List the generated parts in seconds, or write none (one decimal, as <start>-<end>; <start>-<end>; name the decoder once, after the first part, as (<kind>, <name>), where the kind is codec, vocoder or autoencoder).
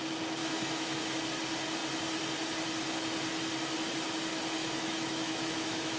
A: 0.4-1.0 (autoencoder, DAC-VAE); 4.6-6.0